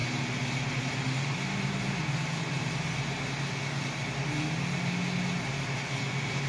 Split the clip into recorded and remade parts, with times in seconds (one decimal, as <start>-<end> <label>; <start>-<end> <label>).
0.0-6.5 recorded

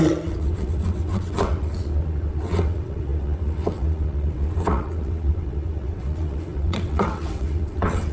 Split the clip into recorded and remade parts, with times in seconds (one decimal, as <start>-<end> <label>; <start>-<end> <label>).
0.0-8.1 remade

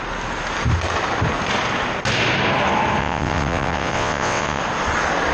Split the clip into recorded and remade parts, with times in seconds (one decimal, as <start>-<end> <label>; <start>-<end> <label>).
0.0-3.0 recorded; 3.0-4.6 remade; 4.6-5.3 recorded

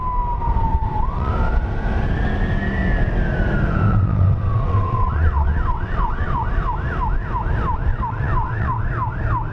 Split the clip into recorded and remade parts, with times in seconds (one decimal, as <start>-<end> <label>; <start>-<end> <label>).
0.0-0.7 recorded; 0.7-1.3 remade; 1.3-3.9 recorded; 3.9-6.5 remade; 6.5-7.9 recorded; 7.9-8.8 remade; 8.8-9.5 recorded

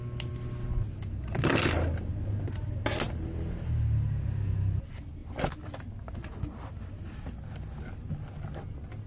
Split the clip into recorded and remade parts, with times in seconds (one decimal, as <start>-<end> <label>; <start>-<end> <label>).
0.0-9.1 recorded

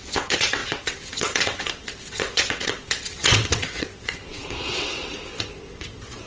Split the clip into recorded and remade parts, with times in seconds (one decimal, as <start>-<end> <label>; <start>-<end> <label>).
0.0-6.3 remade

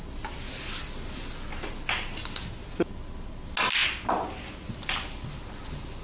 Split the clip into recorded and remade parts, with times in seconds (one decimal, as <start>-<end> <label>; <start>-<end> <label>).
0.0-6.0 recorded